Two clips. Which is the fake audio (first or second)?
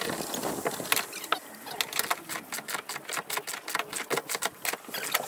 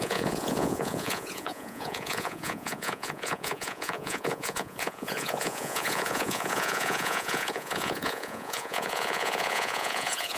second